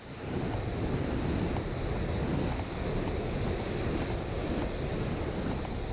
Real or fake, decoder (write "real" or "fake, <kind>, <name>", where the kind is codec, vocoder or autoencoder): real